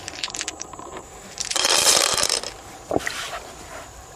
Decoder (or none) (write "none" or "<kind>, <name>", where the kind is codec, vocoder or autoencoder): vocoder, BigVGAN v2